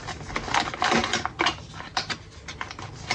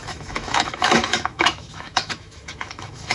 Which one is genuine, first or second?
first